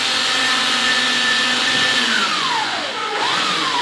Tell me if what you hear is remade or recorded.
remade